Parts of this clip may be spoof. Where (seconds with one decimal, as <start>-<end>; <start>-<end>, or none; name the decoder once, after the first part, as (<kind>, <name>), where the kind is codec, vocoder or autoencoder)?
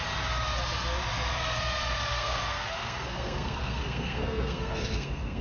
2.1-5.4 (codec, SNAC)